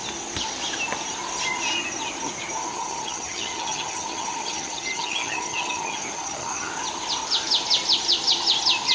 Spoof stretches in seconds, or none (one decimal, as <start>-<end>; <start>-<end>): 2.6-6.7